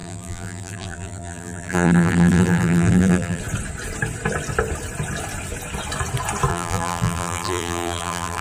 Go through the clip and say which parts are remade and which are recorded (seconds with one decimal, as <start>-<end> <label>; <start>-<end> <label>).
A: 0.0-3.4 remade; 3.4-6.5 recorded; 6.5-8.4 remade